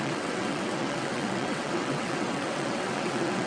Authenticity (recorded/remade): remade